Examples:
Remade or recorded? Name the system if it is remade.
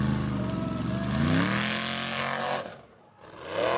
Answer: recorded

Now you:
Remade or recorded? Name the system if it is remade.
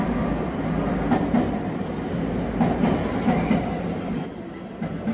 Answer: recorded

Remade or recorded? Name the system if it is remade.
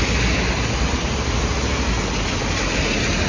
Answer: recorded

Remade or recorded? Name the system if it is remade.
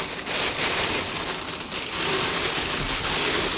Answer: recorded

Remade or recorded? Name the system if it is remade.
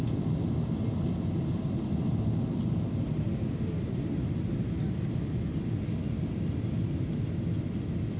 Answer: recorded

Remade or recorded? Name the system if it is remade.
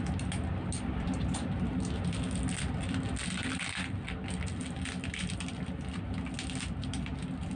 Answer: recorded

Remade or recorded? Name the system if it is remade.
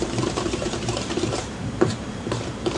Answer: remade, vocoder, BigVGAN v2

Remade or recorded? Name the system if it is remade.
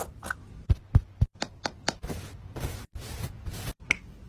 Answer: recorded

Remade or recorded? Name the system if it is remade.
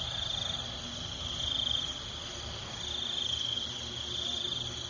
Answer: recorded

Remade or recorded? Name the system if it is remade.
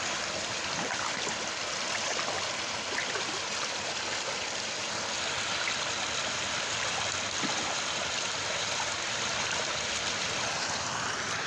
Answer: remade, vocoder, BigVGAN v2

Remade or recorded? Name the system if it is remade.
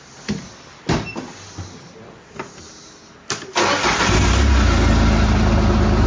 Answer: recorded